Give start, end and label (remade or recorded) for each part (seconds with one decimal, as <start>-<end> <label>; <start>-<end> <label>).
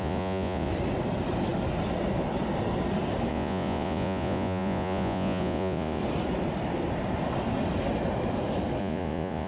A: 0.0-0.7 remade; 0.7-3.3 recorded; 3.3-6.0 remade; 6.0-8.8 recorded; 8.8-9.5 remade